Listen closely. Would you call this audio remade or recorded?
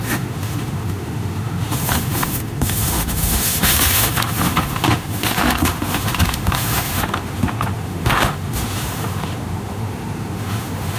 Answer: remade